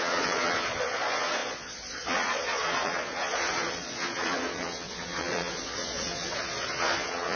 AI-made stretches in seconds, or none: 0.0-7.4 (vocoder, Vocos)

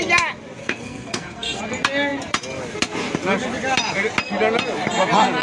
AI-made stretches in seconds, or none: 0.6-1.6 (codec, SNAC)

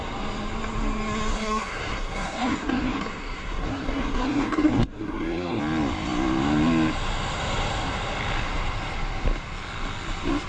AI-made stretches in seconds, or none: 1.3-5.6 (codec, SNAC)

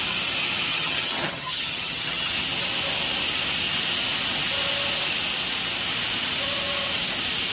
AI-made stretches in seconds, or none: 0.7-2.3 (vocoder, HiFi-GAN)

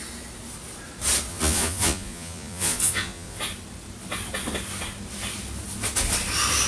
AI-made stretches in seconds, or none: 1.3-3.4 (vocoder, Vocos)

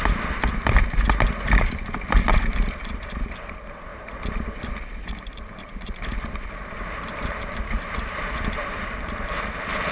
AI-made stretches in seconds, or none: 0.0-3.9 (vocoder, BigVGAN v2); 5.1-9.9

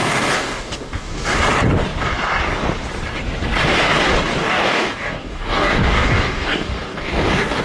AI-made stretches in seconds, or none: 0.0-1.4 (codec, DAC); 4.4-7.6